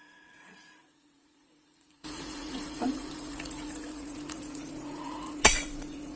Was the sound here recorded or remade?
remade